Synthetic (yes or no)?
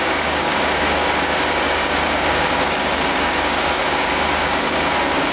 yes